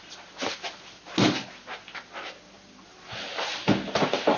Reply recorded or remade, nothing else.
recorded